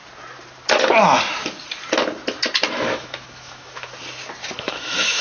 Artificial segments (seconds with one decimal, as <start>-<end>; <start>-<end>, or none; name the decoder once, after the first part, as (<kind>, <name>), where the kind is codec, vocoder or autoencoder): 2.7-3.9 (autoencoder, DAC-VAE); 4.6-5.2